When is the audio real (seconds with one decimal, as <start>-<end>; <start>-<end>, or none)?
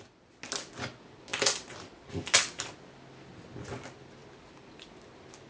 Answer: 0.0-5.5